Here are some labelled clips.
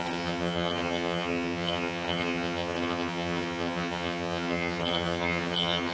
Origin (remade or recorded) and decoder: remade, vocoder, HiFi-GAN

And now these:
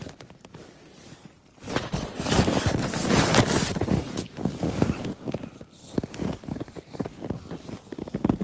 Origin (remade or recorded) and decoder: recorded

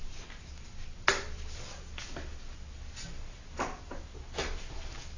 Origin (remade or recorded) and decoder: recorded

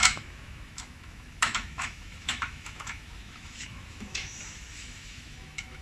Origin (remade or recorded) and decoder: remade, autoencoder, DAC-VAE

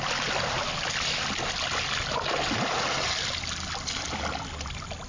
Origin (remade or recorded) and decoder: recorded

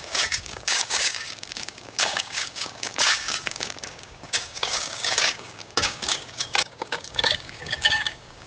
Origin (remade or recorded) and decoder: remade, codec, DAC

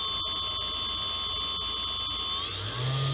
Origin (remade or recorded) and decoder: recorded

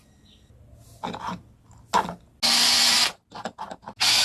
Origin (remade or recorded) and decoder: recorded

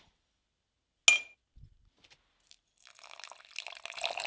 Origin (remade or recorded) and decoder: recorded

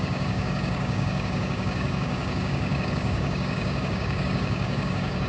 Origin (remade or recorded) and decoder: remade, codec, DAC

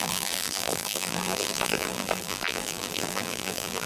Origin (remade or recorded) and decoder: remade, vocoder, BigVGAN v2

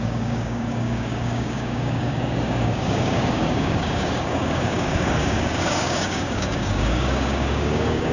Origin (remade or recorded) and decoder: remade, codec, DAC